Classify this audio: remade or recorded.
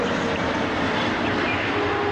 recorded